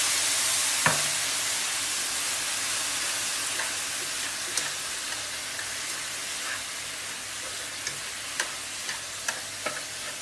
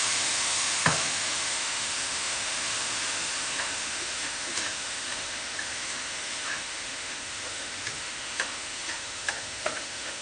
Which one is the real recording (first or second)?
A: first